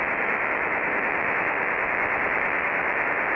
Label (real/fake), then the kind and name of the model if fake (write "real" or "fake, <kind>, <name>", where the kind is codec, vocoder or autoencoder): fake, vocoder, BigVGAN v2